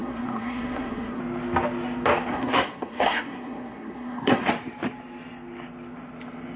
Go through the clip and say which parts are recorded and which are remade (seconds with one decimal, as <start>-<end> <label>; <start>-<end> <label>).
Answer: 0.0-1.2 remade; 1.2-2.3 recorded; 2.3-4.5 remade; 4.5-6.6 recorded